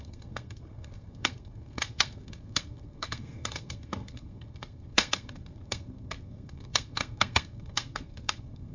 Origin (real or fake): fake